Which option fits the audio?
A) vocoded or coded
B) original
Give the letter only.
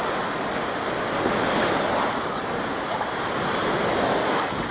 B